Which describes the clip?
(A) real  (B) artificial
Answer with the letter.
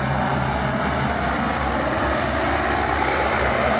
A